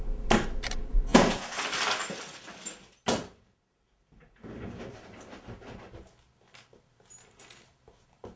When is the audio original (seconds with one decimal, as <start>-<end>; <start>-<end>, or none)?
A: 0.0-0.9; 1.6-8.4

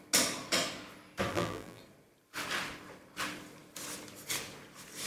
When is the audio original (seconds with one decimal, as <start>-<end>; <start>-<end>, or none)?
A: 0.0-1.3; 1.8-5.1

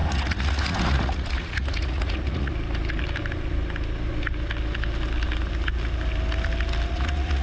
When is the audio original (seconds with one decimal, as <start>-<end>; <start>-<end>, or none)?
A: 2.5-6.9

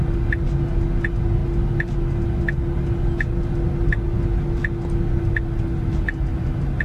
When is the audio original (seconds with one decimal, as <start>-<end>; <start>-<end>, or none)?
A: 0.0-6.8

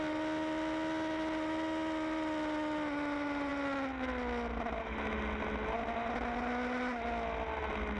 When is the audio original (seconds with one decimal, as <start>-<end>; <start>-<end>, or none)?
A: 0.0-8.0